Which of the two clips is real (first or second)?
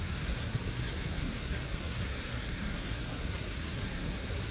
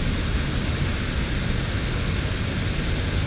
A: second